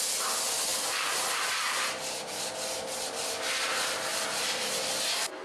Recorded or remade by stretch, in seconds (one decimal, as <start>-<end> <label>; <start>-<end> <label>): 0.0-0.7 recorded; 0.7-1.5 remade; 1.5-4.1 recorded; 4.1-4.8 remade; 4.8-5.4 recorded